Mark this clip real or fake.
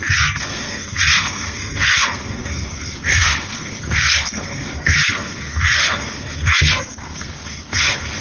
fake